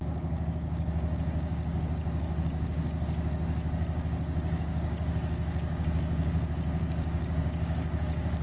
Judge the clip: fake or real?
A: fake